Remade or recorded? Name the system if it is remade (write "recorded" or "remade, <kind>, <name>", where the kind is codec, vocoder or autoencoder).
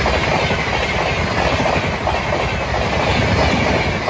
recorded